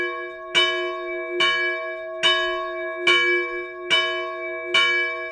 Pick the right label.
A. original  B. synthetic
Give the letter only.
A